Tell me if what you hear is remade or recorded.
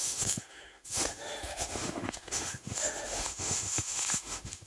remade